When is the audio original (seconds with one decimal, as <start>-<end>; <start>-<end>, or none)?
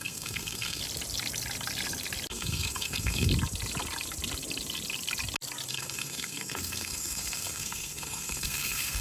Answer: 0.8-2.3; 3.3-5.7